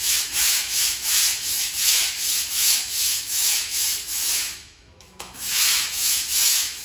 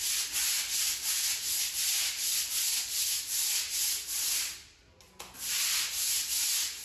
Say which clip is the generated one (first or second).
first